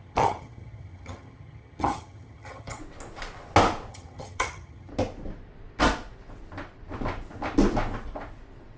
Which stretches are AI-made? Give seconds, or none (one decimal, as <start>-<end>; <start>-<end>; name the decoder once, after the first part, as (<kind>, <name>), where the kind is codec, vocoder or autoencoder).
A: 0.0-2.8 (vocoder, HiFi-GAN); 3.9-4.9

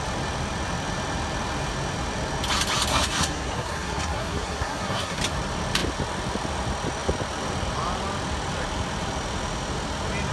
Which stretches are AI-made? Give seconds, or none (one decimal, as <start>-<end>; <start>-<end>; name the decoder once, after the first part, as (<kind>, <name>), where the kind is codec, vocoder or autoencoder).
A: 2.9-5.2 (codec, SNAC)

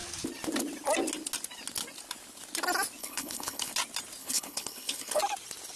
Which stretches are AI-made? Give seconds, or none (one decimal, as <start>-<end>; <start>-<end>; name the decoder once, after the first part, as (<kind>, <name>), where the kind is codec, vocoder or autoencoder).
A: 3.0-3.7 (codec, HILCodec); 4.2-5.2

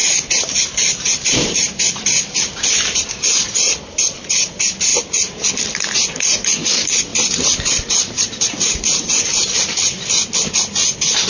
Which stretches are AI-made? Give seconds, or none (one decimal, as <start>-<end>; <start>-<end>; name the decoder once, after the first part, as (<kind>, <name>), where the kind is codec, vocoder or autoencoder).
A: 0.0-3.0 (vocoder, BigVGAN v2); 4.9-5.5; 7.1-9.6

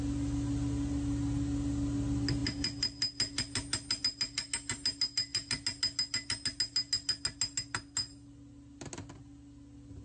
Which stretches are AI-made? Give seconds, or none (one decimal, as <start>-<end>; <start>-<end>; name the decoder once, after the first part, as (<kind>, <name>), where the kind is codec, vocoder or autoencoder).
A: none

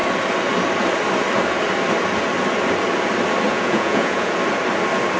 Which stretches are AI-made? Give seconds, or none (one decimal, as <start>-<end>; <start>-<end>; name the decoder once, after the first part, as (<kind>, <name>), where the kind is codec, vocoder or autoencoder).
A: 3.5-4.3 (vocoder, Vocos)

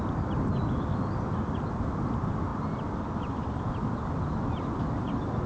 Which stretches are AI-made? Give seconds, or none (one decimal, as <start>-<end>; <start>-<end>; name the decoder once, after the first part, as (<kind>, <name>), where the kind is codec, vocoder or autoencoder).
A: none